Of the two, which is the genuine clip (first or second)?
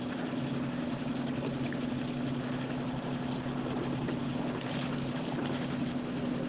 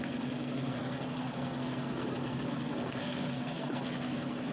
first